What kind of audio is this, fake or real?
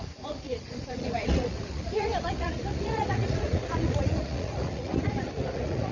fake